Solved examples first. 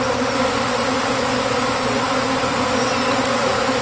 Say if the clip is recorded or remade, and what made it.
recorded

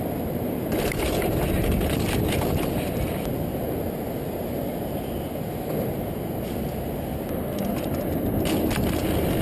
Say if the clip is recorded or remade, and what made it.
recorded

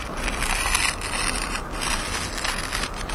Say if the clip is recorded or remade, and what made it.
recorded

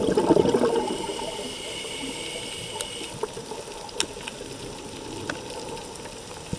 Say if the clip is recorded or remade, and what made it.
recorded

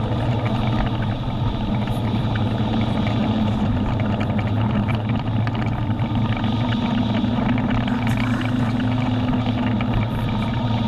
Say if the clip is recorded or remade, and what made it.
recorded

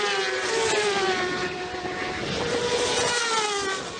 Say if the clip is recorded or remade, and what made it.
recorded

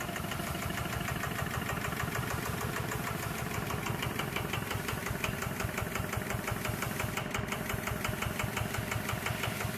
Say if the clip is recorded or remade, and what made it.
remade, vocoder, BigVGAN v2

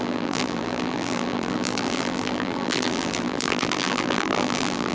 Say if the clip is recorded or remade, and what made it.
remade, vocoder, BigVGAN v2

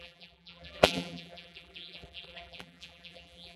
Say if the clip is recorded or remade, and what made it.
remade, vocoder, BigVGAN v2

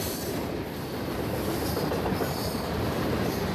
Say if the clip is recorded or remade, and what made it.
remade, vocoder, BigVGAN v2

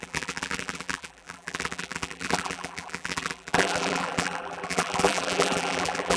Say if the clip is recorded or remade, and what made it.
remade, vocoder, BigVGAN v2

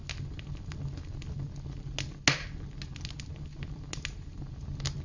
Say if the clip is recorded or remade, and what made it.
recorded